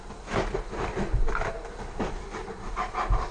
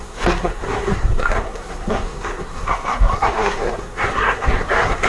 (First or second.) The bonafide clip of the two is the first